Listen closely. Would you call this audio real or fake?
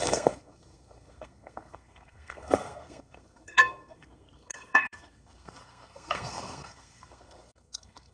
fake